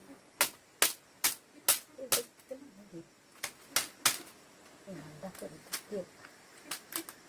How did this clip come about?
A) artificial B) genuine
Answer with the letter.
B